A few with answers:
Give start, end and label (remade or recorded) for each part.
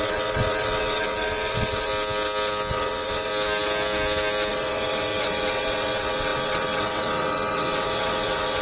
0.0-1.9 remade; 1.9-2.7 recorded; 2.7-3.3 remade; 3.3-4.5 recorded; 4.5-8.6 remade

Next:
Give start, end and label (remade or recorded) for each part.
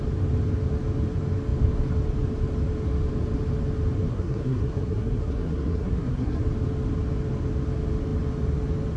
0.0-4.1 recorded; 4.1-6.4 remade; 6.4-9.0 recorded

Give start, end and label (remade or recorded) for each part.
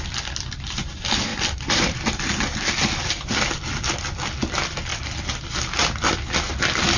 0.0-1.3 recorded; 1.3-3.4 remade; 3.4-7.0 recorded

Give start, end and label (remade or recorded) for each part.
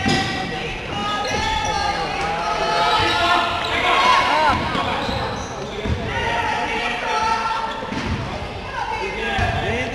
0.0-9.9 recorded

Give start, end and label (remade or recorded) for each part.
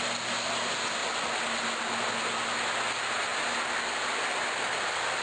0.0-5.2 recorded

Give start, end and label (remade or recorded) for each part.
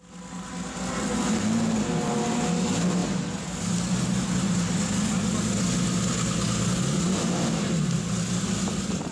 0.0-9.1 recorded